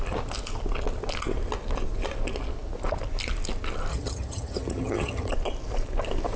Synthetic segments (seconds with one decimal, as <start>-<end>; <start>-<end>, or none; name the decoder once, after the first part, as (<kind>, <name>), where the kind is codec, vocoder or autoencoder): 3.9-5.3 (vocoder, HiFi-GAN)